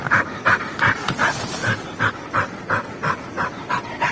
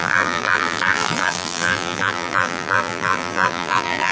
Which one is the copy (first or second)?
second